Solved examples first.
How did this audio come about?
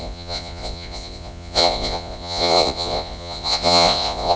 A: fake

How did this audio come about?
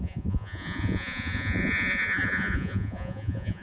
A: fake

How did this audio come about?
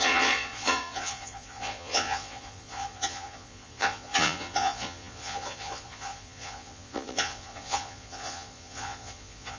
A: fake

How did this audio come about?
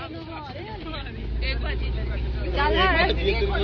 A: real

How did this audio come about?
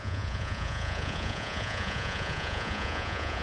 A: fake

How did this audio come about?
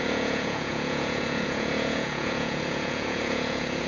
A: fake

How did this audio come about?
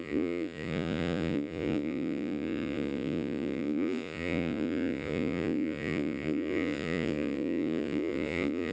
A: fake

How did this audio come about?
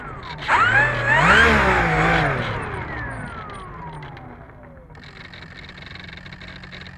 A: real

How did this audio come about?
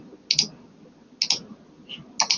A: real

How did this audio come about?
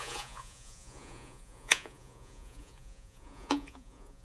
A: fake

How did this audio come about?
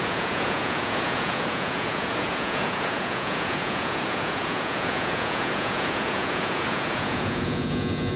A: fake